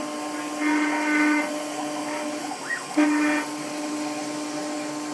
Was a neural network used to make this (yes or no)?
no